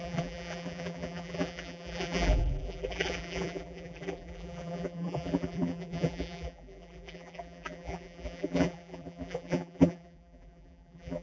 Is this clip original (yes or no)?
no